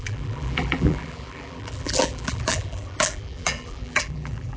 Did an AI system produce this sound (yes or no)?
yes